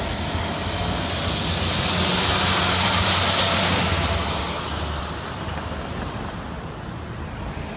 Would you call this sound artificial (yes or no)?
no